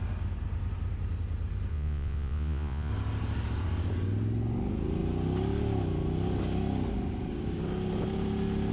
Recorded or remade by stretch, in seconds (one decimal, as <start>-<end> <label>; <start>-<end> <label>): 0.0-1.7 recorded; 1.7-2.9 remade; 2.9-8.7 recorded